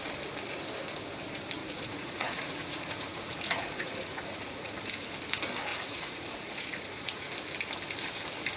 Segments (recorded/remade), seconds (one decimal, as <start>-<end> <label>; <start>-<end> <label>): 0.0-1.6 recorded; 1.6-4.7 remade; 4.7-5.7 recorded; 5.7-7.3 remade; 7.3-8.6 recorded